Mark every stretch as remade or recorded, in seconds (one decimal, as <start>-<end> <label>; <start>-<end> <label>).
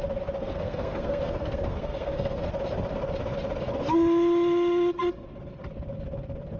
0.0-0.4 recorded; 0.4-2.5 remade; 2.5-6.6 recorded